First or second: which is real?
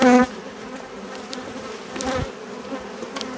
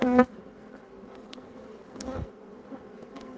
first